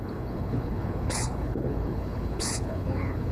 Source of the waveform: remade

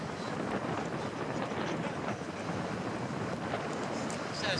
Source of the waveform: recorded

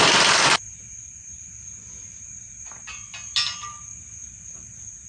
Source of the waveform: recorded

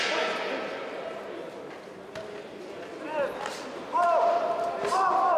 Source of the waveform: recorded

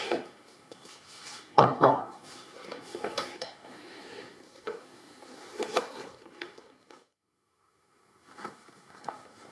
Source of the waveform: remade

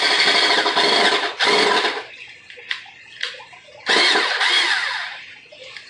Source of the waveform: recorded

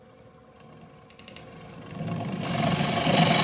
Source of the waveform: recorded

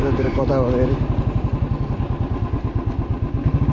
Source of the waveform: recorded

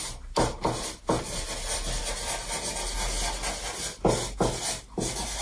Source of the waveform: recorded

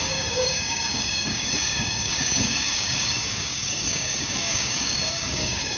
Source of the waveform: remade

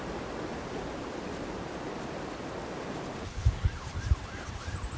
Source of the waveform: recorded